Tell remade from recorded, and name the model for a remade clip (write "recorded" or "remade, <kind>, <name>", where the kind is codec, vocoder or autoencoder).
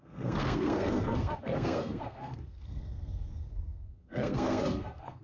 remade, codec, SNAC